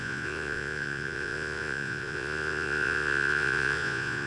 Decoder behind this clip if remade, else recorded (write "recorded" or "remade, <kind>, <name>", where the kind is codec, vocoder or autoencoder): remade, vocoder, Vocos